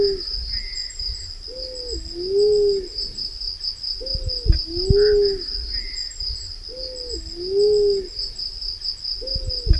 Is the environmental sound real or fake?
real